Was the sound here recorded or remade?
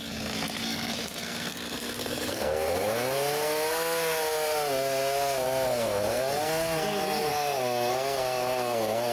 remade